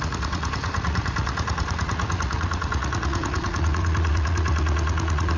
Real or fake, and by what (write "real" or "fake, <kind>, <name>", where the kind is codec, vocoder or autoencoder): fake, vocoder, Vocos